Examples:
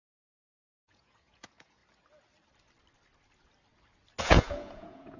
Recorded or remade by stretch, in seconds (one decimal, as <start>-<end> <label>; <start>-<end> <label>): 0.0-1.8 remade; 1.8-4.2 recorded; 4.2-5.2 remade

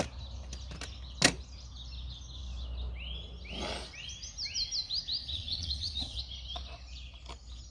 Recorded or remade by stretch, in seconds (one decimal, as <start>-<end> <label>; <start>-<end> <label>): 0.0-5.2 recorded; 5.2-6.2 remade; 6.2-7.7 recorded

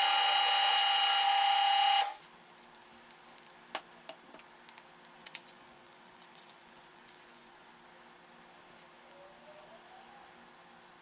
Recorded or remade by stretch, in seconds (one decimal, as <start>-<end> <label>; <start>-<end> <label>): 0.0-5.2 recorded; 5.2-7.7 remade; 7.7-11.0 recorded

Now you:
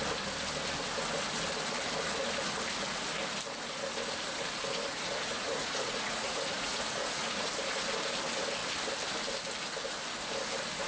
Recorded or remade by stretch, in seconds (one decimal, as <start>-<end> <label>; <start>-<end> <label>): 0.0-4.8 recorded; 4.8-7.5 remade; 7.5-10.9 recorded

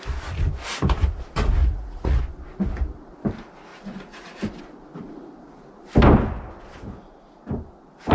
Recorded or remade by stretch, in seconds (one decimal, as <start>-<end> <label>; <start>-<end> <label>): 0.0-1.6 recorded; 1.6-2.2 remade; 2.2-3.7 recorded; 3.7-4.6 remade; 4.6-8.1 recorded